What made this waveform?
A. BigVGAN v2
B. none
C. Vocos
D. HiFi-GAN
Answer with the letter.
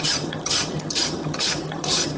D